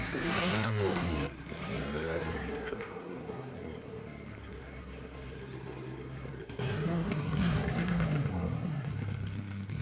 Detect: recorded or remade remade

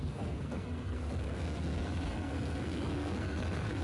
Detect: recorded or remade remade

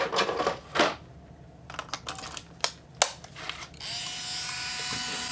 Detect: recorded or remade recorded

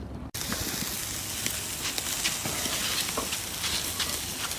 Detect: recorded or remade recorded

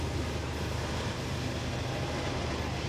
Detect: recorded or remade recorded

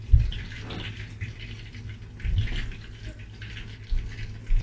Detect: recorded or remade recorded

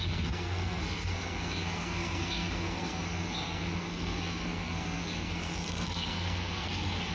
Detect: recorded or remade remade